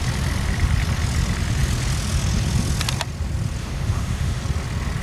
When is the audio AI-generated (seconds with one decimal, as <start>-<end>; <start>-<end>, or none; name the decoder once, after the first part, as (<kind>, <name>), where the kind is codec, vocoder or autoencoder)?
3.6-4.4 (autoencoder, DAC-VAE)